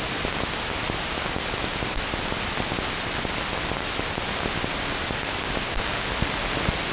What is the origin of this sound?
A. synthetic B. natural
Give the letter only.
B